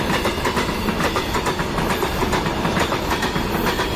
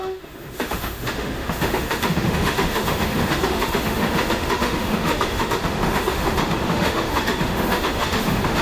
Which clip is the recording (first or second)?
first